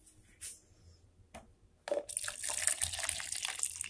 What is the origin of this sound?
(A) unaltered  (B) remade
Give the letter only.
A